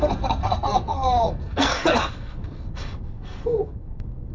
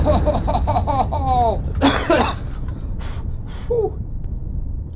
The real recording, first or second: second